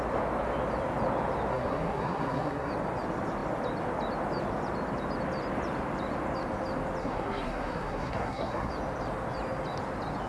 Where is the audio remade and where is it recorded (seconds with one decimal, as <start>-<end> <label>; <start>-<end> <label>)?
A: 0.0-1.5 recorded; 1.5-2.7 remade; 2.7-7.0 recorded; 7.0-8.7 remade; 8.7-10.3 recorded